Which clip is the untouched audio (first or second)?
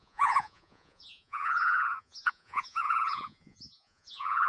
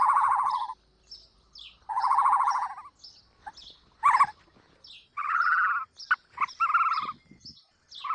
second